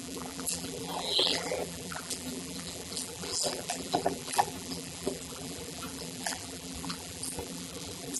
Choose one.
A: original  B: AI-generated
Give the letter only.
B